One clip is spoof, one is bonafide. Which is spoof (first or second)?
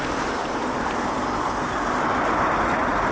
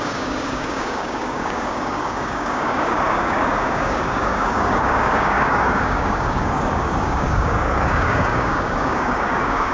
second